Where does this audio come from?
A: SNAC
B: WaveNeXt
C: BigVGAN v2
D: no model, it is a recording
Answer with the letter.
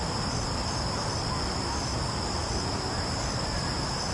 D